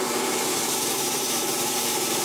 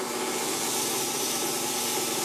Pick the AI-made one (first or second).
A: first